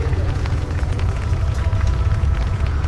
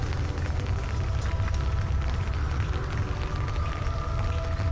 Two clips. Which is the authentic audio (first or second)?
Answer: second